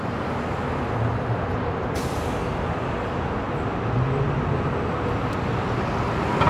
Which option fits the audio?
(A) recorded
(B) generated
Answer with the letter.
A